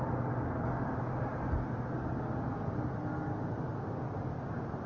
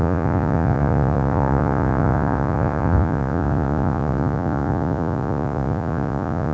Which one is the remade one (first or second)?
second